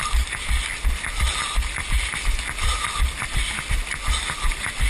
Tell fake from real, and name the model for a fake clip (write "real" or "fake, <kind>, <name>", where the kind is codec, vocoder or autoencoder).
real